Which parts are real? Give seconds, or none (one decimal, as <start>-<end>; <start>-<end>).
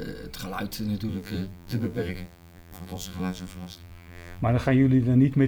0.0-1.1; 4.4-5.5